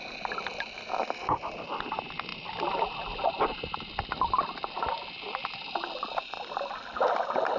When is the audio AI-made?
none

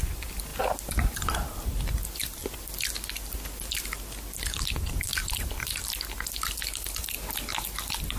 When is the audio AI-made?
none